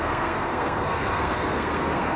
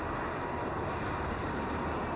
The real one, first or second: second